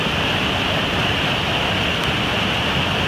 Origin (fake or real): real